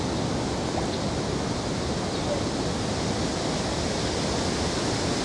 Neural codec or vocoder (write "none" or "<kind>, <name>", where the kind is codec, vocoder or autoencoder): none